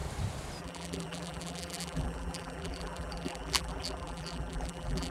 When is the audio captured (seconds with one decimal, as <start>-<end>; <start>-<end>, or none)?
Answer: 0.0-0.6